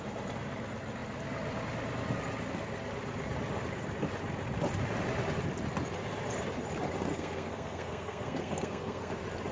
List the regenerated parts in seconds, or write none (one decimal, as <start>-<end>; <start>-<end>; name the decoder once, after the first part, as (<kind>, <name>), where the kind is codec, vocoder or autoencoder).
7.1-9.1 (codec, SNAC)